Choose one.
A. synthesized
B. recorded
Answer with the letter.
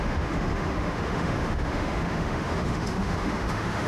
A